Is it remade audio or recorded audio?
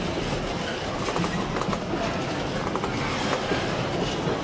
recorded